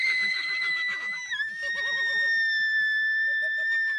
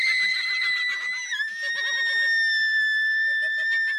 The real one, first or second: second